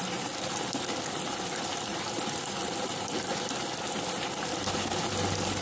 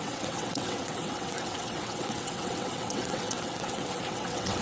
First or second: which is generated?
second